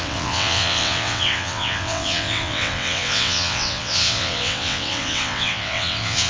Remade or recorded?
remade